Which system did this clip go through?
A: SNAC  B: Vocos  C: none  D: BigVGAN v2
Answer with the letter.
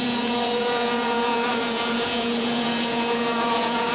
B